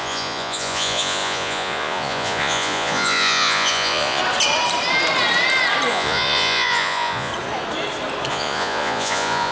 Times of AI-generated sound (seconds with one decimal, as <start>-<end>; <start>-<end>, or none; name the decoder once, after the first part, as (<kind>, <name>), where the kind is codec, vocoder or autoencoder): 0.0-4.2 (vocoder, Vocos); 5.9-7.3; 8.3-9.5